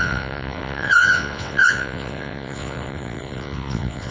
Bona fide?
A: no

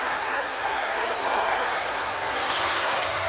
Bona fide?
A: no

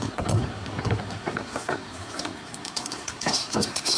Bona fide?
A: no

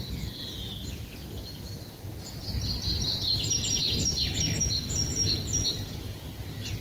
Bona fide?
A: yes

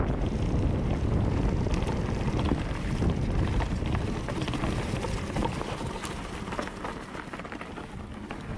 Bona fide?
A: yes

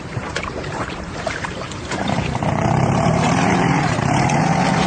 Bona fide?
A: no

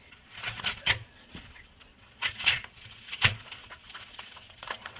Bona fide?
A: no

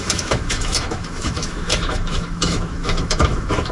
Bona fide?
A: no